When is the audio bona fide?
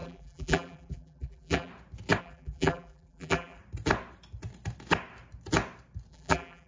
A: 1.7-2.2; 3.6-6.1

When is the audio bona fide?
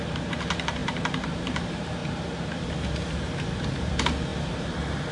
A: 2.0-3.1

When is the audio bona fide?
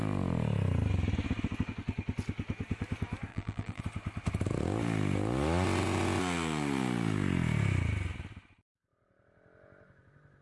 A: 0.0-3.3; 3.8-10.4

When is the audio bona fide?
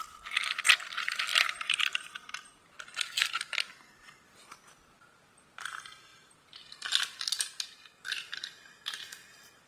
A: 0.0-1.3; 2.8-9.7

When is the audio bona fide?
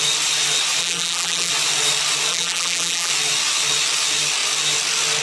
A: 0.0-0.8; 1.5-2.3; 3.1-5.2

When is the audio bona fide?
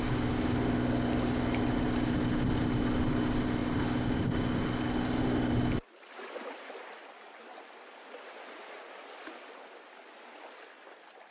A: 0.0-11.3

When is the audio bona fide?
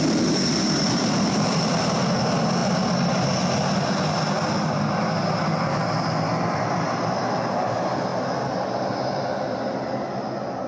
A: 2.6-6.5; 8.1-9.1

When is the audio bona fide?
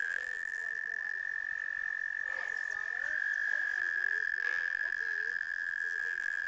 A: 1.2-3.8